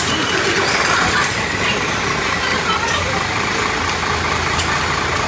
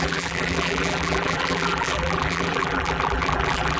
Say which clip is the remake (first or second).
second